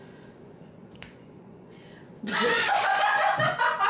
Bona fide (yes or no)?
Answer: no